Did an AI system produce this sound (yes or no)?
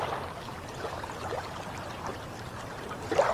no